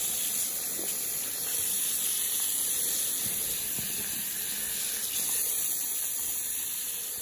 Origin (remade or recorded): recorded